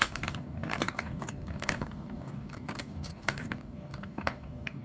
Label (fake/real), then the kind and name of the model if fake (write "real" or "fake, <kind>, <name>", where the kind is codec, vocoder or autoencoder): fake, codec, DAC